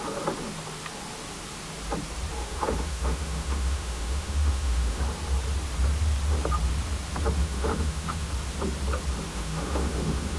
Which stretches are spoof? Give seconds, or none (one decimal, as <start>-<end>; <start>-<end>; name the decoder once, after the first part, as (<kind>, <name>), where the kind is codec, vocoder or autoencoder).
2.4-5.0 (autoencoder, DAC-VAE); 7.4-8.3; 9.3-10.4